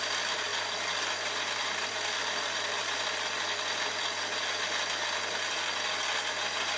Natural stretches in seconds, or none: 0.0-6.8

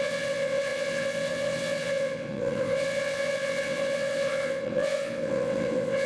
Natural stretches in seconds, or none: none

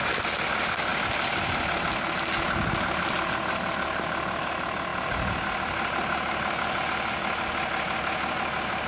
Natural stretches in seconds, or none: 0.0-8.9